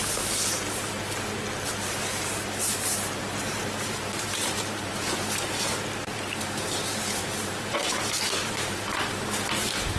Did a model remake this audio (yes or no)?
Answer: yes